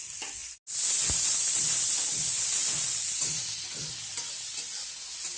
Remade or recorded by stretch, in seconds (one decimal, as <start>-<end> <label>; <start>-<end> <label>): 0.0-5.4 recorded